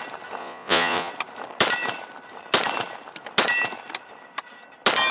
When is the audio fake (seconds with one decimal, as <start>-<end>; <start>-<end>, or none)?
0.4-1.1